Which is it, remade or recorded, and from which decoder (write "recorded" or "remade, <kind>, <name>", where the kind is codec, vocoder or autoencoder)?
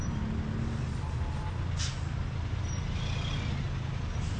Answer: recorded